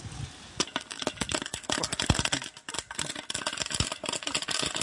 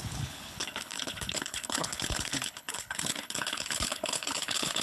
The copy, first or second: second